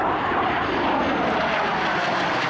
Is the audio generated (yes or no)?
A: no